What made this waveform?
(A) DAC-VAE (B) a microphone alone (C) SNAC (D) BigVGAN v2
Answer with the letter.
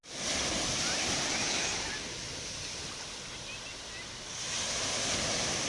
B